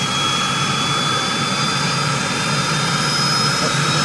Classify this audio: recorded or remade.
recorded